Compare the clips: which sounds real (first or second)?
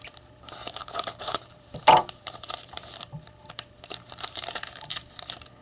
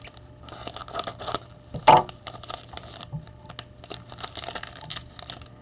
second